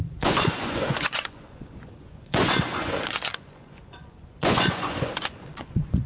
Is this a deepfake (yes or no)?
yes